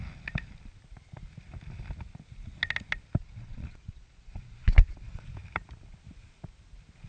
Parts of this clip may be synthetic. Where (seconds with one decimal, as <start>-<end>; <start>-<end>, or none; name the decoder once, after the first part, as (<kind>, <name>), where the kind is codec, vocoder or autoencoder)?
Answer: 3.2-5.3 (vocoder, Vocos)